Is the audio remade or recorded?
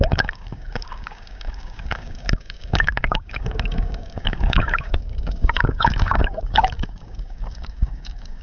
remade